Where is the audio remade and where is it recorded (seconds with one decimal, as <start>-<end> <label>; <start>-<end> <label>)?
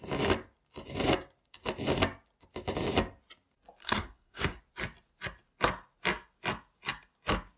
0.0-3.8 recorded; 3.8-4.6 remade; 4.6-7.6 recorded